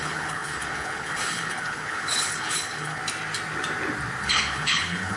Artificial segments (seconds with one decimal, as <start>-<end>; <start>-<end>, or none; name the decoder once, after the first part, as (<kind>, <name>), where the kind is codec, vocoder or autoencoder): 0.0-3.0 (codec, HILCodec); 4.2-5.2